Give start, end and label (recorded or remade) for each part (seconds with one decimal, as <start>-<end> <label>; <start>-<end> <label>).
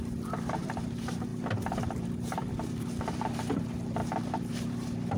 0.0-5.2 remade